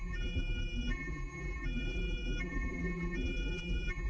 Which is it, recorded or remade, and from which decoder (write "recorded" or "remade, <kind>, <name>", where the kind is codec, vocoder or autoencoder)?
remade, vocoder, BigVGAN v2